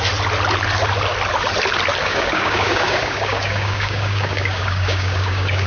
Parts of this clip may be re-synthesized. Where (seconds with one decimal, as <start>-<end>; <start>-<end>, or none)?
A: 2.0-5.7